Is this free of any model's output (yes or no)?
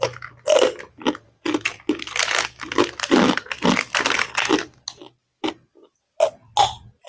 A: yes